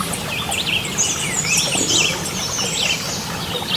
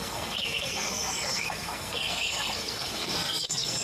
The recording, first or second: first